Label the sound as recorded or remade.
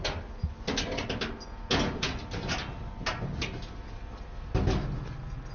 recorded